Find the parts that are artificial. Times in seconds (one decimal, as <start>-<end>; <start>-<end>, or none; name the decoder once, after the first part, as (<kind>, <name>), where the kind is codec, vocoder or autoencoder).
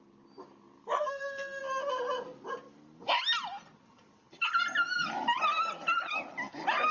0.8-1.6 (codec, SNAC)